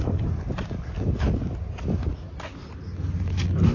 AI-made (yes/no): no